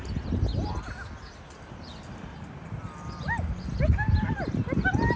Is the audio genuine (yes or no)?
yes